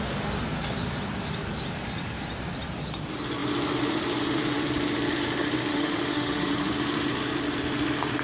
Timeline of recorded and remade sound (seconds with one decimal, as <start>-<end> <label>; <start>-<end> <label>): 0.0-5.7 recorded; 5.7-6.5 remade; 6.5-8.2 recorded